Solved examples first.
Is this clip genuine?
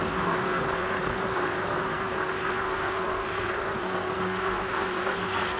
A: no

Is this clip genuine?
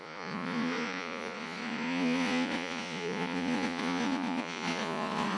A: no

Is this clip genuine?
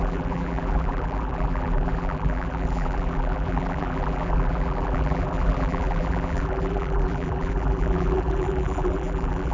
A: no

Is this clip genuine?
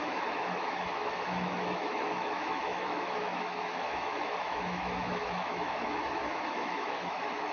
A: no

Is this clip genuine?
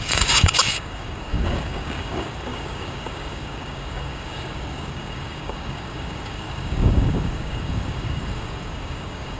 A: no